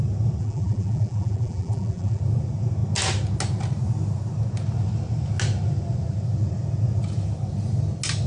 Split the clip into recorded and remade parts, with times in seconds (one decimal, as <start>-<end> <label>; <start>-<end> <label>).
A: 0.0-0.4 recorded; 0.4-2.2 remade; 2.2-8.3 recorded